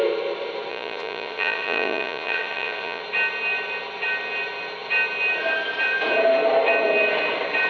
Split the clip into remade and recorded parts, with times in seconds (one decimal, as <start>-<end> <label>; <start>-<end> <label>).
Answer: 0.0-0.7 recorded; 0.7-3.0 remade; 3.0-7.7 recorded